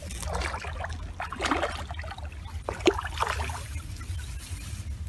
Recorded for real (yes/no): yes